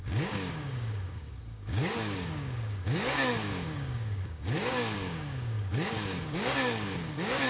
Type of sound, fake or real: fake